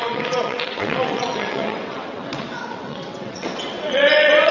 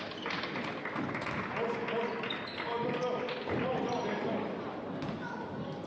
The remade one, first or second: first